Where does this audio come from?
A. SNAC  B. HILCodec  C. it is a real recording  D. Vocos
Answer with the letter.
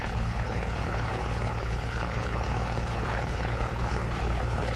B